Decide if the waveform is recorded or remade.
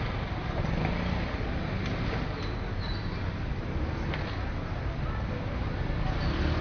recorded